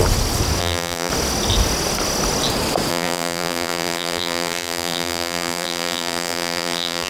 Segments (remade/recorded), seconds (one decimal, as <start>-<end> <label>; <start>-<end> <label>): 0.0-0.6 recorded; 0.6-1.1 remade; 1.1-2.9 recorded; 2.9-7.1 remade